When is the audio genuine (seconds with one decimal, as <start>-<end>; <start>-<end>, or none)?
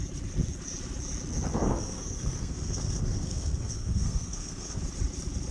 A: 0.0-1.5; 4.8-5.5